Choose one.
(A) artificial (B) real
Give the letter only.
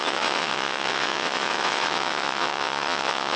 A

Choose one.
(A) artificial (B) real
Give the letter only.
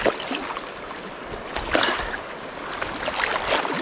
B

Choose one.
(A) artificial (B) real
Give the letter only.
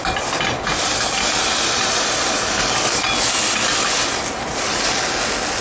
B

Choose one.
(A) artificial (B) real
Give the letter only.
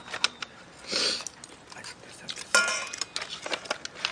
B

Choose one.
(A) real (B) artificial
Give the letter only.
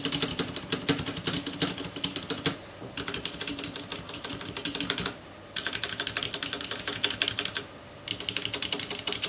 A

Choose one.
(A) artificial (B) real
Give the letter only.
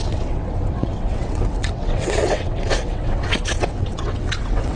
A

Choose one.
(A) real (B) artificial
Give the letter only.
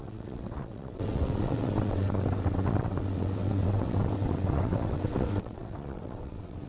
B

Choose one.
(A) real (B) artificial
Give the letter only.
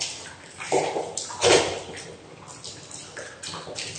A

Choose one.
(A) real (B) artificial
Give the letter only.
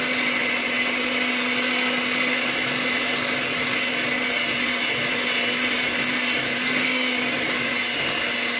A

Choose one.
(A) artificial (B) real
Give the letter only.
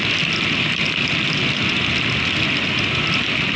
B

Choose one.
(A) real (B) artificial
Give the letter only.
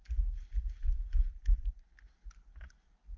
A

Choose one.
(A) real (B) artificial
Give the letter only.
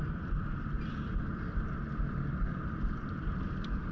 A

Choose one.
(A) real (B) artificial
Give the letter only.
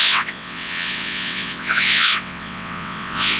B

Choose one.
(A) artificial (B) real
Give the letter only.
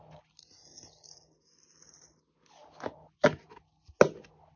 B